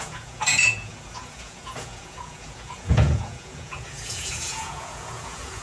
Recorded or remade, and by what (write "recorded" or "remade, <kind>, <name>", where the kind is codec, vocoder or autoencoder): remade, vocoder, Vocos